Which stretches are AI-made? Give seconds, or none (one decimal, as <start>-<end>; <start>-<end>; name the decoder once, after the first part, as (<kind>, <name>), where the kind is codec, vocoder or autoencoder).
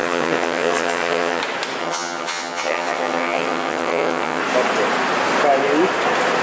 0.0-1.4 (vocoder, HiFi-GAN); 1.8-4.4